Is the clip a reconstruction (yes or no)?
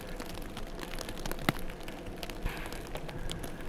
no